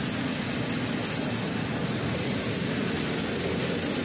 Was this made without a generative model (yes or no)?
yes